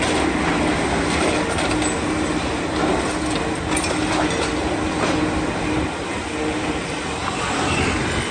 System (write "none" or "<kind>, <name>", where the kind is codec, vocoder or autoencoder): none